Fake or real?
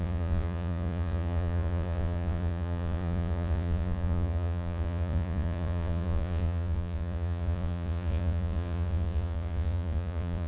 fake